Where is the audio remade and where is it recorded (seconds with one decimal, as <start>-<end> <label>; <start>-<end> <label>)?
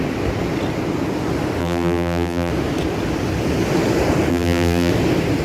0.0-1.6 recorded; 1.6-2.5 remade; 2.5-4.3 recorded; 4.3-4.9 remade; 4.9-5.4 recorded